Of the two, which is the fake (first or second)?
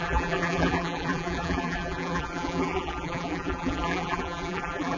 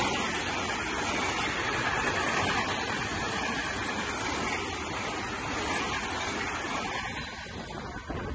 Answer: first